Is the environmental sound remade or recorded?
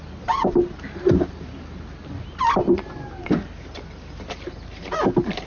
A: recorded